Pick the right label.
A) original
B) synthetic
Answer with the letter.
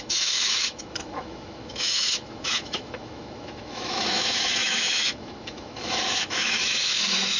B